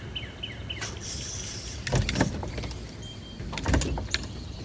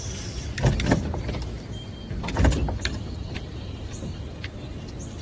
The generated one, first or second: second